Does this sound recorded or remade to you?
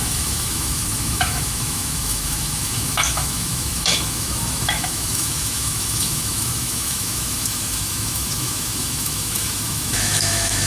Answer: remade